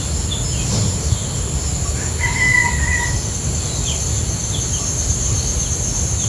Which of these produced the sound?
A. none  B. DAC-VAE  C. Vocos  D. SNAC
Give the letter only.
A